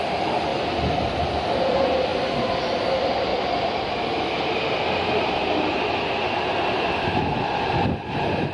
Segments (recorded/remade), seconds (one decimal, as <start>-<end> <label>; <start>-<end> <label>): 0.0-2.1 recorded; 2.1-2.7 remade; 2.7-3.3 recorded; 3.3-7.9 remade; 7.9-8.5 recorded